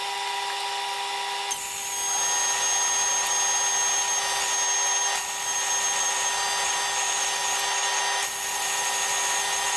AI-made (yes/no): no